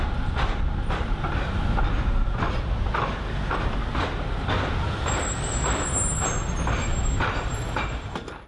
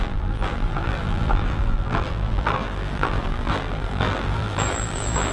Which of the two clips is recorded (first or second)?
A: first